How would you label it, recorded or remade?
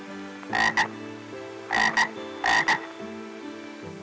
recorded